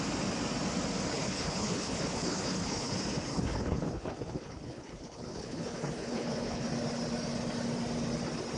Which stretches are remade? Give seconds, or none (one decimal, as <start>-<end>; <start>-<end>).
1.1-2.9; 3.3-6.7